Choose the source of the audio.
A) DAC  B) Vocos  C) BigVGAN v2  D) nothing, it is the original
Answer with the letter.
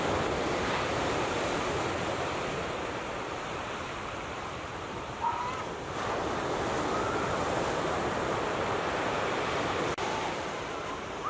C